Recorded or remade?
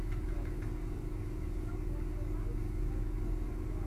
remade